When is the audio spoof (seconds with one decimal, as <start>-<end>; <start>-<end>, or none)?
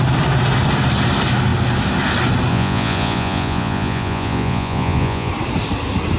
2.5-5.3